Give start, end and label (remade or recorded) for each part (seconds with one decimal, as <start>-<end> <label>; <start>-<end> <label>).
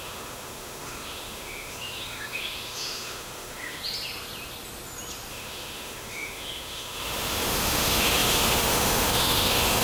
0.0-3.8 remade; 3.8-5.3 recorded; 5.3-9.8 remade